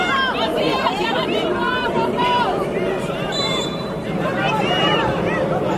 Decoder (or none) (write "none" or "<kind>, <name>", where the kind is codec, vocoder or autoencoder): vocoder, BigVGAN v2